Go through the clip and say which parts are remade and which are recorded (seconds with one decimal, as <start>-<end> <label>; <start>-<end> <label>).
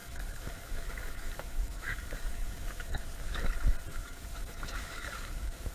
0.0-3.4 remade; 3.4-3.9 recorded; 3.9-5.7 remade